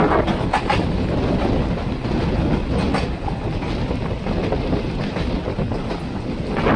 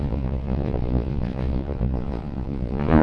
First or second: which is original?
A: first